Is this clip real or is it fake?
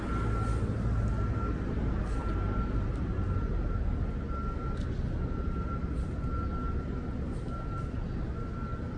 real